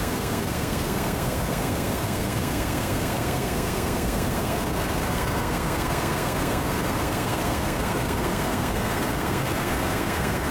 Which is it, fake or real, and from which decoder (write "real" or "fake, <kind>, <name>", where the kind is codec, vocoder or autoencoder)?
fake, codec, SNAC